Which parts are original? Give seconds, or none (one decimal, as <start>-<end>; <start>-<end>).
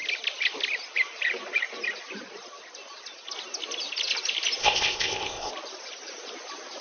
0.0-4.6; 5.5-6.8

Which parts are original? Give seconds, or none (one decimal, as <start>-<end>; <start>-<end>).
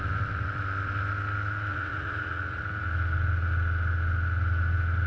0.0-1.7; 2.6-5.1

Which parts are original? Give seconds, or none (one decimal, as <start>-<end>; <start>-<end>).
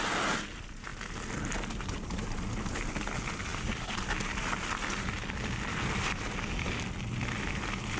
0.0-8.0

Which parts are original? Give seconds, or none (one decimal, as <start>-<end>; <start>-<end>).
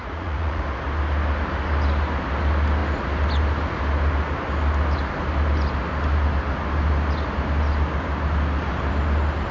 0.6-9.5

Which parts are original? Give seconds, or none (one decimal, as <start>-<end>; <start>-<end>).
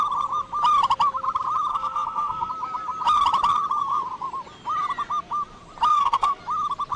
0.0-1.7; 2.5-5.9; 6.4-7.0